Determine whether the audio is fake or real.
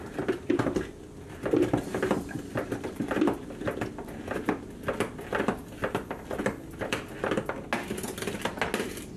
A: real